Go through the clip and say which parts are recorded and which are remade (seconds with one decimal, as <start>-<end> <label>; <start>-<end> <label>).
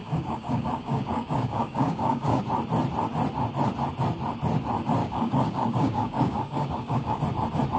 0.0-2.4 remade; 2.4-5.0 recorded; 5.0-7.2 remade; 7.2-7.8 recorded